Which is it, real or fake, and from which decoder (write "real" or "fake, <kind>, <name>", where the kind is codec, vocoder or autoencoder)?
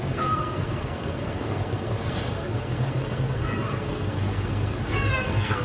fake, codec, SNAC